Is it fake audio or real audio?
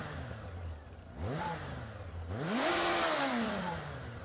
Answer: fake